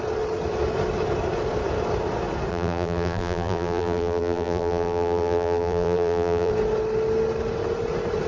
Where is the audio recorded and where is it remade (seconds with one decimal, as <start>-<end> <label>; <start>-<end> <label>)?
0.0-2.5 recorded; 2.5-6.5 remade; 6.5-8.3 recorded